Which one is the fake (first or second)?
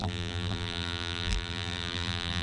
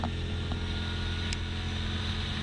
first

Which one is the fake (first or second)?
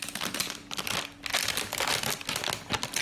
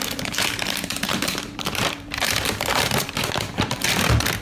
second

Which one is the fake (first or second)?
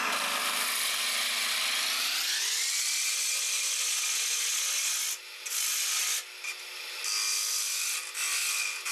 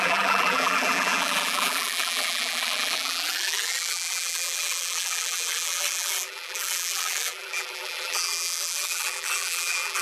second